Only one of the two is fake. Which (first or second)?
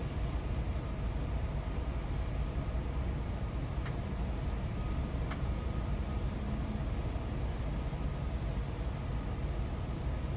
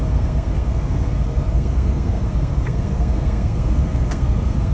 second